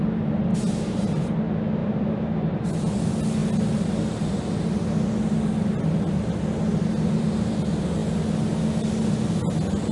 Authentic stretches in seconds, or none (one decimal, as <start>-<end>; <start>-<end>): 0.0-0.5; 1.3-1.8; 2.9-9.9